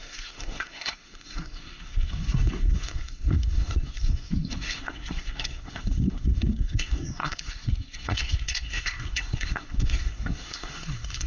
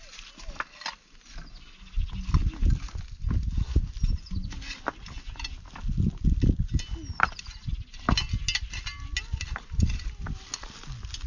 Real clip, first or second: second